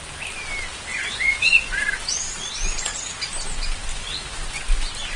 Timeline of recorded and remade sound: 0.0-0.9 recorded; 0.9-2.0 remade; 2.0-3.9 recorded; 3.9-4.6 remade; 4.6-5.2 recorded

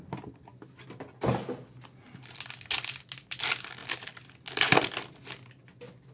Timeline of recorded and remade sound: 0.0-6.1 recorded

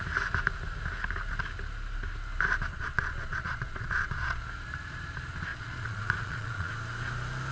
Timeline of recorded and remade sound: 0.0-2.7 recorded; 2.7-4.4 remade; 4.4-5.5 recorded; 5.5-6.7 remade; 6.7-7.5 recorded

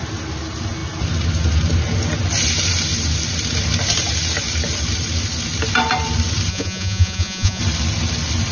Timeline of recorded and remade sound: 0.0-6.5 recorded; 6.5-7.6 remade; 7.6-8.5 recorded

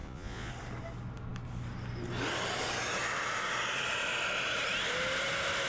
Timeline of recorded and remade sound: 0.0-0.5 remade; 0.5-5.7 recorded

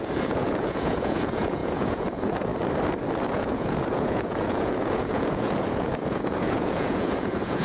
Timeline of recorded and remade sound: 0.0-2.5 remade; 2.5-3.3 recorded; 3.3-7.6 remade

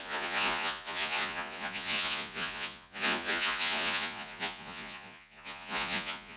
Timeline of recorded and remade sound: 0.0-6.4 remade

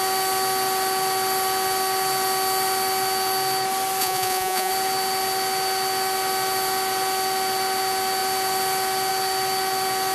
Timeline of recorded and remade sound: 0.0-4.0 recorded; 4.0-4.7 remade; 4.7-10.1 recorded